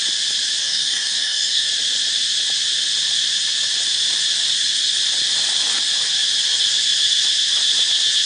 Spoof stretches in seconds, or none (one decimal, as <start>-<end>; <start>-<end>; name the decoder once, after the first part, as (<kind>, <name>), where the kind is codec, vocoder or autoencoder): 0.6-1.7 (codec, DAC)